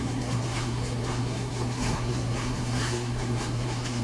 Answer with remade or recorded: remade